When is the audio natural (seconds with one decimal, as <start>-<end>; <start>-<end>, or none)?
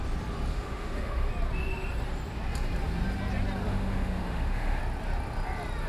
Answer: 0.0-0.5; 1.3-3.7; 4.8-5.9